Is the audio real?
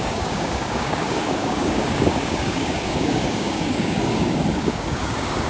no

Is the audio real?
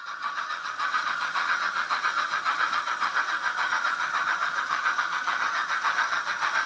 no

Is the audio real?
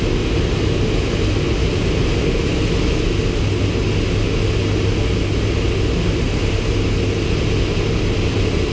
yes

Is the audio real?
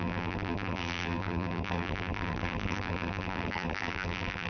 no